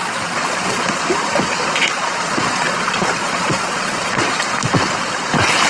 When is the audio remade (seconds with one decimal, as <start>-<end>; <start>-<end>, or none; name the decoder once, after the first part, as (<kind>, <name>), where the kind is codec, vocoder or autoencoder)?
0.0-1.0 (vocoder, Vocos); 1.8-4.4

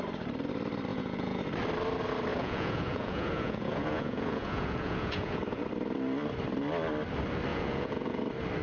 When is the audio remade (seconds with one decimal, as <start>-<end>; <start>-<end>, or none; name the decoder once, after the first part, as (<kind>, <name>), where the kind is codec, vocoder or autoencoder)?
0.9-1.4 (vocoder, Vocos); 2.3-5.4; 7.5-8.2

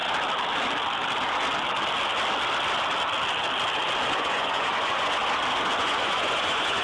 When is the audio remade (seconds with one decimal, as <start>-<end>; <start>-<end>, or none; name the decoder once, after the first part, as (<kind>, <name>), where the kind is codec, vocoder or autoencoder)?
4.1-5.2 (vocoder, Vocos); 5.8-6.8

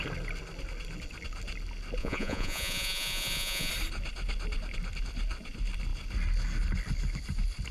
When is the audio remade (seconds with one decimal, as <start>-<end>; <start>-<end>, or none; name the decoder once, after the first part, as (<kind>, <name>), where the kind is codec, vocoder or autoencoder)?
2.0-3.7 (vocoder, Vocos)

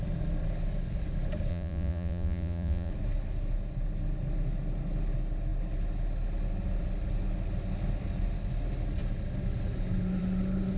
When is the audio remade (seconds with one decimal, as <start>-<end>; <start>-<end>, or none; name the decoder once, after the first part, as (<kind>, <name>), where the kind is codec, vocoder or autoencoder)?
1.5-2.9 (vocoder, Vocos)

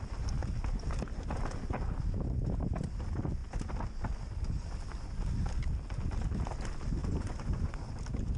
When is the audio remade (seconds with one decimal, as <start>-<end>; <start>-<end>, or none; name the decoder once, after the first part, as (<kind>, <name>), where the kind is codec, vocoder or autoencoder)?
7.0-7.9 (vocoder, Vocos)